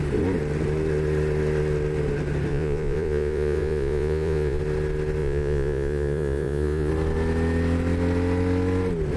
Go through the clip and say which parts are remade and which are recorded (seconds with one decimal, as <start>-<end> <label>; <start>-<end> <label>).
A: 0.0-2.5 recorded; 2.5-4.6 remade; 4.6-5.2 recorded; 5.2-6.9 remade; 6.9-9.2 recorded